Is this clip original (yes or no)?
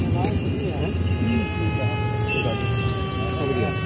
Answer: yes